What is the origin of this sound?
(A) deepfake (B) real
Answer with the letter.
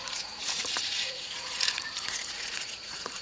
A